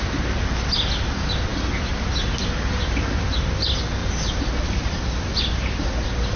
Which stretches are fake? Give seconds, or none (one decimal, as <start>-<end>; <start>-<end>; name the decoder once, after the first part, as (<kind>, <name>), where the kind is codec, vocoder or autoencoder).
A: none